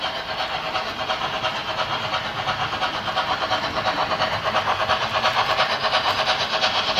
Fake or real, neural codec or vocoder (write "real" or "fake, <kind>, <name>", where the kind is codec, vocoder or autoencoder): real